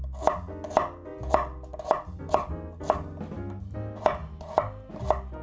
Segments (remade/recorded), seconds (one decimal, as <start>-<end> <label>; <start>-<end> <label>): 0.0-5.4 recorded